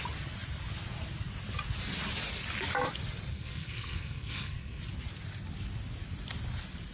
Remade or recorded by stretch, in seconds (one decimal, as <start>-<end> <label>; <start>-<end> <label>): 0.0-3.3 recorded; 3.3-4.8 remade; 4.8-6.9 recorded